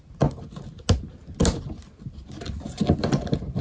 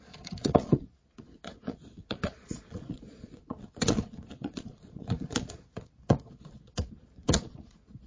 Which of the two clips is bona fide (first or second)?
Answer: first